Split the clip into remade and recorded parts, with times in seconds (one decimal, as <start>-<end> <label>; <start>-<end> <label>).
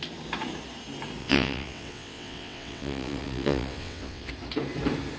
0.0-1.2 recorded; 1.2-4.3 remade; 4.3-5.2 recorded